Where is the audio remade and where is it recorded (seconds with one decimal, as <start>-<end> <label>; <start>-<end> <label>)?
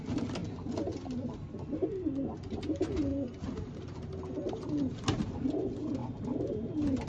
0.0-7.1 recorded